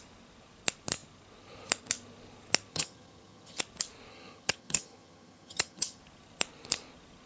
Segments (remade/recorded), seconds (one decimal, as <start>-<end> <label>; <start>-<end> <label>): 0.0-2.7 recorded; 2.7-3.6 remade; 3.6-4.1 recorded; 4.1-6.0 remade; 6.0-7.3 recorded